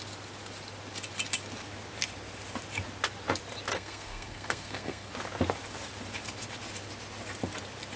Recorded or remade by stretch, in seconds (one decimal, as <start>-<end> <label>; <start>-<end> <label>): 0.0-3.7 recorded; 3.7-5.1 remade; 5.1-8.0 recorded